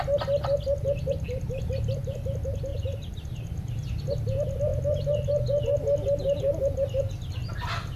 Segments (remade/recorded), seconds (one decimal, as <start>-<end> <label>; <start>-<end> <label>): 0.0-2.7 recorded; 2.7-4.0 remade; 4.0-8.0 recorded